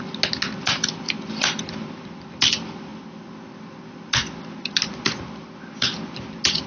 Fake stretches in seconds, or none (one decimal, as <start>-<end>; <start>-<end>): none